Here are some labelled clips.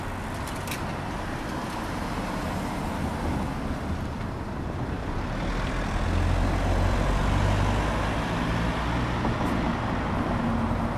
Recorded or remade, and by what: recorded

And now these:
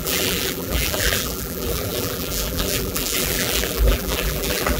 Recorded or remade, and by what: remade, vocoder, BigVGAN v2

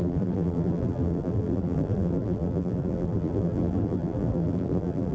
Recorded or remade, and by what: remade, vocoder, BigVGAN v2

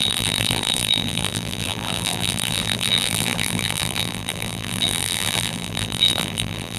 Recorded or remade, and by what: remade, vocoder, BigVGAN v2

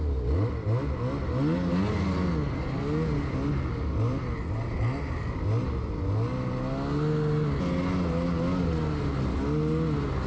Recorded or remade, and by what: recorded